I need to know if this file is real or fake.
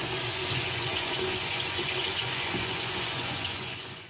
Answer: fake